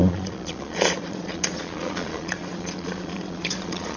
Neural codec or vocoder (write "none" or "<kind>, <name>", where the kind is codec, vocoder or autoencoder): vocoder, Vocos